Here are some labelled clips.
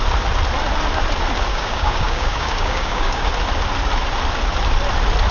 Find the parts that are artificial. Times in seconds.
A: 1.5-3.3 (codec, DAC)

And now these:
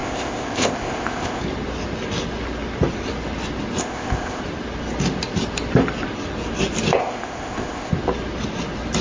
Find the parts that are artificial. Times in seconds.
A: 0.0-1.4 (codec, ZipCodec); 3.8-4.4; 7.0-7.9

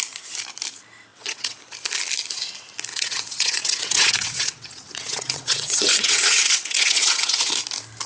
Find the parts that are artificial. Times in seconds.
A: 1.1-1.6 (vocoder, WaveNeXt); 2.9-7.5

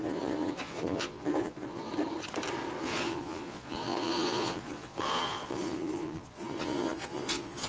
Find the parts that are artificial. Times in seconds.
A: 0.0-1.9 (vocoder, Vocos); 2.8-7.7

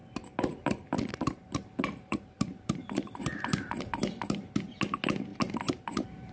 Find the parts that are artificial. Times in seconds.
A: 0.0-3.8 (vocoder, BigVGAN v2); 5.3-6.3

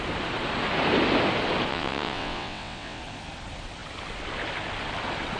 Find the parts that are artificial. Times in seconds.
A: 1.7-3.0 (vocoder, WaveNeXt)